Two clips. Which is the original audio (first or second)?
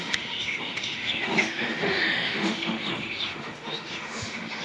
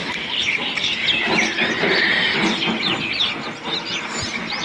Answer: second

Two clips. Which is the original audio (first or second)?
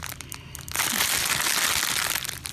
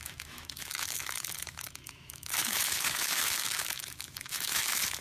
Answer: first